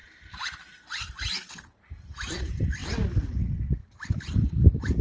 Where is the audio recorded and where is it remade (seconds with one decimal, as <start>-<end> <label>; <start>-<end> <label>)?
0.0-5.0 recorded